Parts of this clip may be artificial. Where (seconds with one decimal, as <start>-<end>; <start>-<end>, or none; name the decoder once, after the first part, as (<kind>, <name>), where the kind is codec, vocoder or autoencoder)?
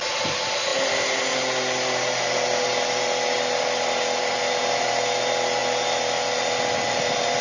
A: none